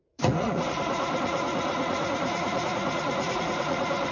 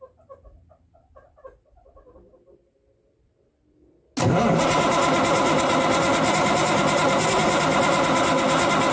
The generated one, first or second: first